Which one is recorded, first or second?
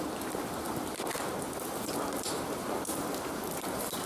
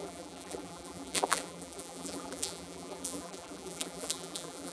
first